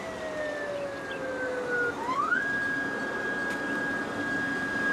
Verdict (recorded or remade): recorded